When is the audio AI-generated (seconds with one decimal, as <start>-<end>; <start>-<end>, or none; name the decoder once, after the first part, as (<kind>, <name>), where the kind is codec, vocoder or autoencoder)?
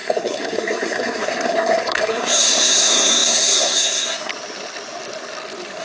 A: 0.0-4.3 (codec, SNAC)